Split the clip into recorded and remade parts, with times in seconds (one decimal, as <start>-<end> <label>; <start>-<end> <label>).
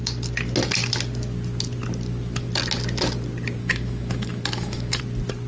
0.0-3.6 recorded; 3.6-5.0 remade; 5.0-5.5 recorded